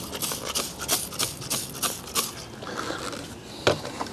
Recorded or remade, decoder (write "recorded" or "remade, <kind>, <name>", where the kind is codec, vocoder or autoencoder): recorded